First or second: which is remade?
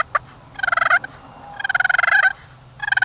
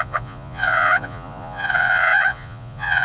second